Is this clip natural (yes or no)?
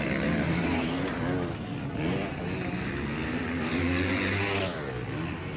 yes